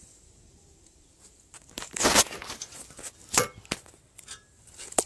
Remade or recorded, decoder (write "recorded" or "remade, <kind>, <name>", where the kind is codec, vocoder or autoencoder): recorded